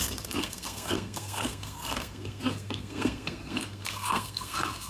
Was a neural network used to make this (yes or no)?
yes